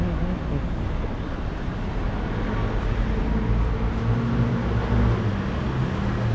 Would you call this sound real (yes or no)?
yes